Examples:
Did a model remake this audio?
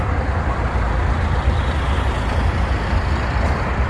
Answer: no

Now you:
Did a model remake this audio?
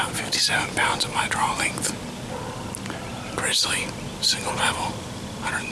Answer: no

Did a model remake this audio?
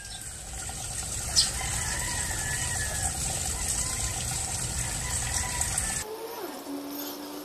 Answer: no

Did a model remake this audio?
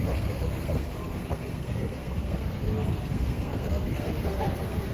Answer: yes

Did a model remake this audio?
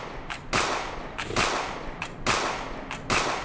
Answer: no